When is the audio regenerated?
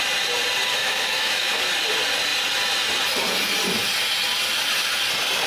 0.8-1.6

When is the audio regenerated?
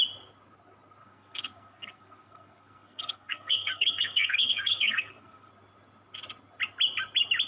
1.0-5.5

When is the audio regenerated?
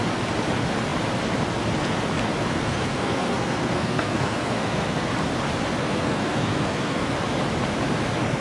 2.5-5.1; 5.8-7.1